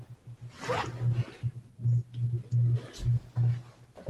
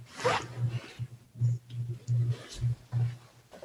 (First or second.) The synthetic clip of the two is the second